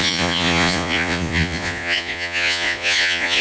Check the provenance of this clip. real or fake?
fake